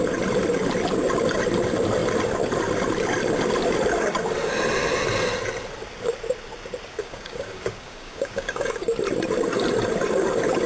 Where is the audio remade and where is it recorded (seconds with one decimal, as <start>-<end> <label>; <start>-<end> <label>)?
0.0-7.0 recorded; 7.0-8.9 remade; 8.9-10.7 recorded